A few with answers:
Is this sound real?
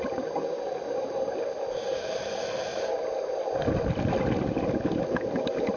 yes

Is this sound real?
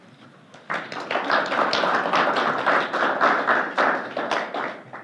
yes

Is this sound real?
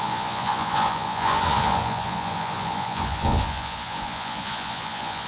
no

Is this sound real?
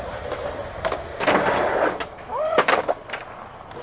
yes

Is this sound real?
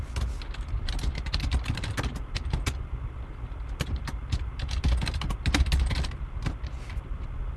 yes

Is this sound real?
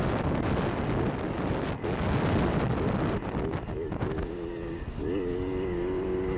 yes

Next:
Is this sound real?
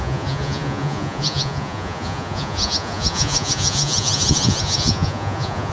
no